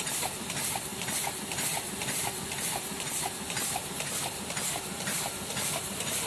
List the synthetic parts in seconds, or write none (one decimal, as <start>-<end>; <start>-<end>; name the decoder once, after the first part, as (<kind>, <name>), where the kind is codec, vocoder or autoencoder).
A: 0.0-6.3 (vocoder, BigVGAN v2)